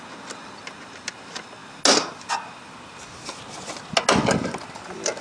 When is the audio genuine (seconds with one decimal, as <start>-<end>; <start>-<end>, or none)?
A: 0.0-5.2